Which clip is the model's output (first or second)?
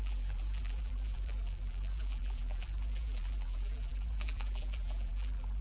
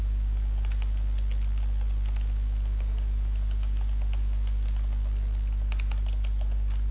first